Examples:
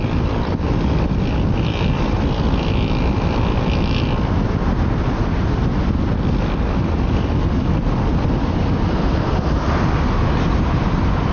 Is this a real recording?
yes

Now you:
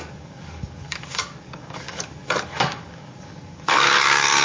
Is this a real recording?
no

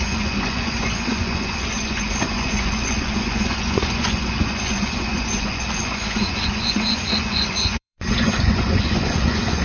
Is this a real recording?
no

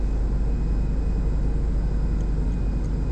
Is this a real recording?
yes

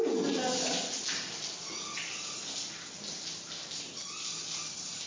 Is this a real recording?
yes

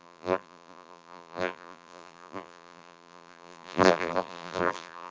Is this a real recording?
no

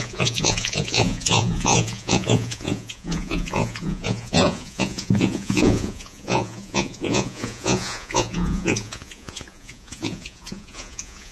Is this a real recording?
no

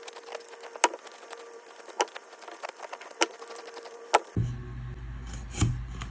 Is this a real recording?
yes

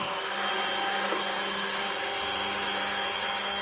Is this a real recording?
yes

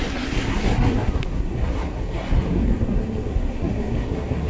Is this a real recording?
no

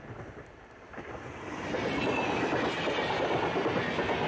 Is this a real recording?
yes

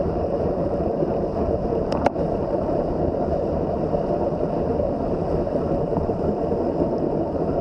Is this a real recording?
no